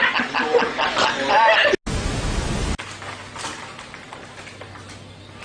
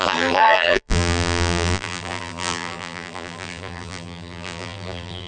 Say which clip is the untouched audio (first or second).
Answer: first